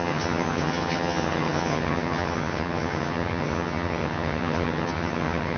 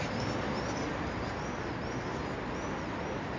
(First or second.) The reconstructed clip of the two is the first